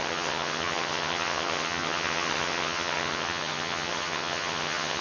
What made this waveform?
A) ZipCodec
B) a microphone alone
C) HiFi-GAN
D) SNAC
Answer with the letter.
C